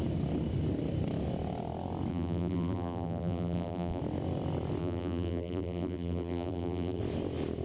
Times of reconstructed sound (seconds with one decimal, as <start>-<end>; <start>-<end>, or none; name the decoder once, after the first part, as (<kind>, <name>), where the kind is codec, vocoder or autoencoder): 2.1-4.0 (vocoder, BigVGAN v2); 4.8-7.0